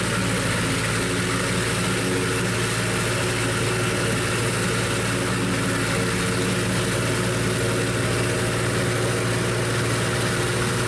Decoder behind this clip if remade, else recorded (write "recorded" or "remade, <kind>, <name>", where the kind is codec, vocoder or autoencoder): recorded